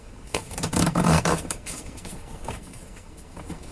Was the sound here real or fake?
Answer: fake